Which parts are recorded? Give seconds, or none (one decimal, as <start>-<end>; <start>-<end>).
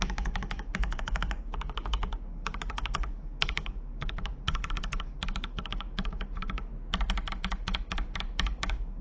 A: 6.7-7.3